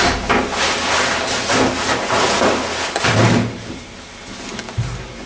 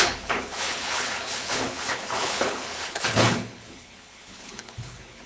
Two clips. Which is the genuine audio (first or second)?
first